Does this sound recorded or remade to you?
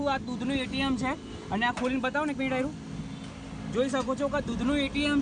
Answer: recorded